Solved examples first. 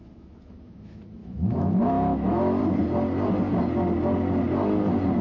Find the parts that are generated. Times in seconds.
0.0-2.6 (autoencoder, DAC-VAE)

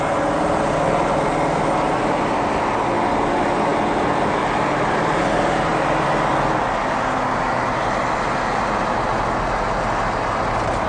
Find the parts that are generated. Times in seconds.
none

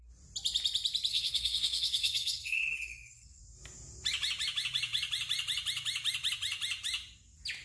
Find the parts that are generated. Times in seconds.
1.1-3.4 (codec, SNAC)

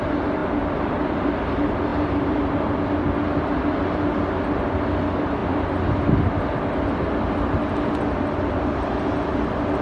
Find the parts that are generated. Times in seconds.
1.9-2.7 (vocoder, BigVGAN v2)

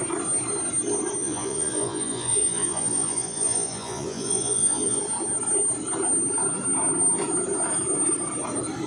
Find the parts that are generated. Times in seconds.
1.2-5.0 (vocoder, Vocos)

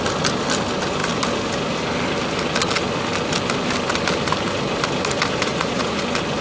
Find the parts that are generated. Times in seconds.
5.5-6.0 (vocoder, Vocos)